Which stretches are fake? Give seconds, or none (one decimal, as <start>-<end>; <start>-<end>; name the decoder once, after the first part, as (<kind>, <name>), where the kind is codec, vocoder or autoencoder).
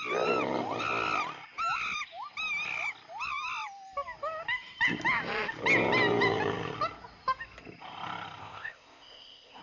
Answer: 8.4-9.6 (codec, ZipCodec)